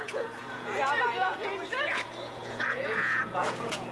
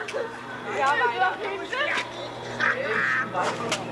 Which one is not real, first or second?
first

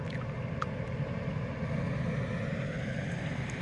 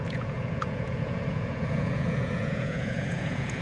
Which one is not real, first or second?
second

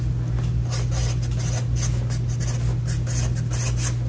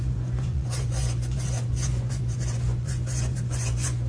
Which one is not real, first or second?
second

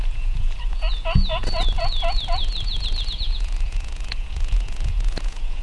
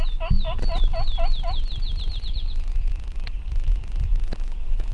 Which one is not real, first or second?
first